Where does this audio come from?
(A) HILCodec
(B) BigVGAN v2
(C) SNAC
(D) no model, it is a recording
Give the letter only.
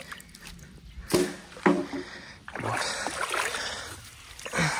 D